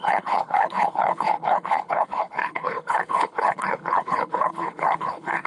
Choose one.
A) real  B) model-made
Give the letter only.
B